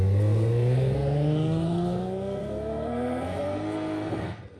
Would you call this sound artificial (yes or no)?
yes